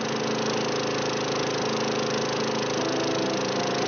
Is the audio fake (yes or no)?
no